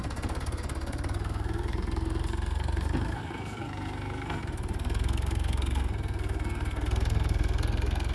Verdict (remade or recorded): remade